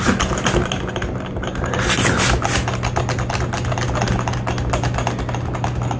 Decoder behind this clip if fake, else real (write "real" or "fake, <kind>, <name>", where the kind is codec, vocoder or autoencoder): real